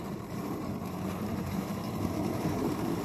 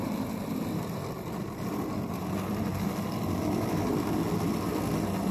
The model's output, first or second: first